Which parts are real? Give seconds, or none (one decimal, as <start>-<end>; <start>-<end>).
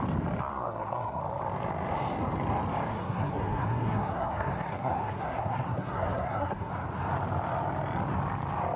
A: 0.0-0.5; 1.2-2.9; 6.7-8.8